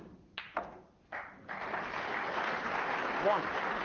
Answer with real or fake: real